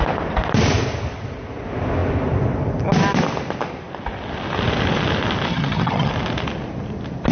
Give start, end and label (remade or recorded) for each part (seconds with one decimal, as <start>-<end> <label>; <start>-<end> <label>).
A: 0.0-5.5 recorded; 5.5-6.1 remade; 6.1-7.3 recorded